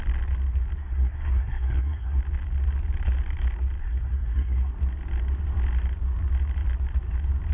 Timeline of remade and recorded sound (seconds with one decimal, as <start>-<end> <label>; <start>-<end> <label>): 0.0-0.8 recorded; 0.8-2.2 remade; 2.2-3.8 recorded; 3.8-4.7 remade; 4.7-7.5 recorded